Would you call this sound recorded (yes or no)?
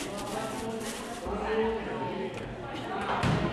yes